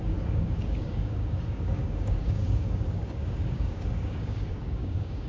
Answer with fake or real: fake